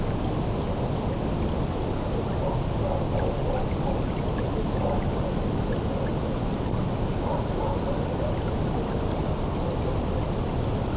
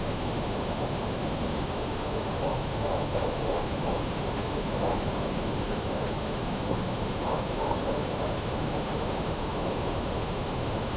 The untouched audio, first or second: first